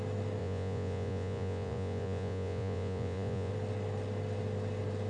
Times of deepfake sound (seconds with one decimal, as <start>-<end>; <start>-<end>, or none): 0.4-3.5